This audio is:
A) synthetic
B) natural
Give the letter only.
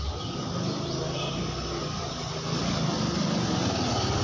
A